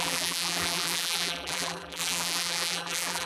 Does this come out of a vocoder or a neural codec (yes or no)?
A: yes